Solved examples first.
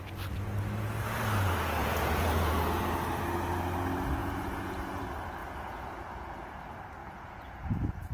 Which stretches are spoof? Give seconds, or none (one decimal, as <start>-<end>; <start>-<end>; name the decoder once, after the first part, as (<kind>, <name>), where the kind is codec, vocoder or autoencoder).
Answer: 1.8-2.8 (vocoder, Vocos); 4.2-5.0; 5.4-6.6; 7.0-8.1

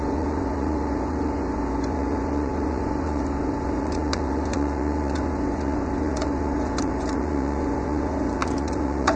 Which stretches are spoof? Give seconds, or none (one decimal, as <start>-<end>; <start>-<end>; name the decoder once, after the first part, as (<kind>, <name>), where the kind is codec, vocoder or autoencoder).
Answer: 0.0-9.2 (vocoder, Vocos)

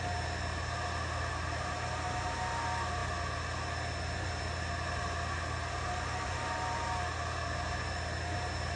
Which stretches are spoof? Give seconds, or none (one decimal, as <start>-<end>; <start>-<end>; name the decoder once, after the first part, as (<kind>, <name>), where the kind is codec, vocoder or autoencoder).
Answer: none

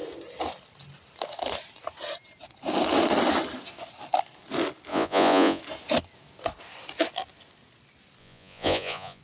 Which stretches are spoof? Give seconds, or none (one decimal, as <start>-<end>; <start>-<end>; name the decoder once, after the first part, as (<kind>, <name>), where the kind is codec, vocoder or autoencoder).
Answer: 4.9-5.6 (vocoder, Vocos); 8.2-9.2

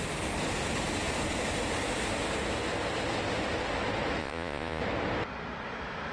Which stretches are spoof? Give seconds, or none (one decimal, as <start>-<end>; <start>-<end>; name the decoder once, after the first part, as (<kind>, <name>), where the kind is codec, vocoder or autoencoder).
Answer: 4.2-4.8 (vocoder, Vocos)

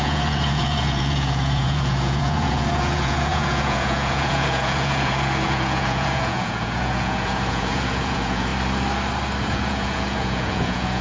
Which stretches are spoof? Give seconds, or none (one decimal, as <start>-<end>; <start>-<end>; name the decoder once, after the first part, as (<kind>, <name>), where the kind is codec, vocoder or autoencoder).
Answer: 0.0-8.5 (vocoder, Vocos); 9.4-11.0

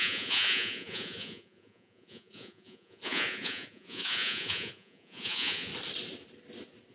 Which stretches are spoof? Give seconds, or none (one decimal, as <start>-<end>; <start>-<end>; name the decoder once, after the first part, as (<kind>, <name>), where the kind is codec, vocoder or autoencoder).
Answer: 0.0-5.7 (vocoder, Vocos)

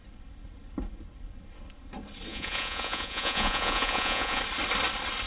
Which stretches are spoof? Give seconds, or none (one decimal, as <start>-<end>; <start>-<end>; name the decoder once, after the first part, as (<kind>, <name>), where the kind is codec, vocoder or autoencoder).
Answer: 2.3-4.4 (vocoder, Vocos)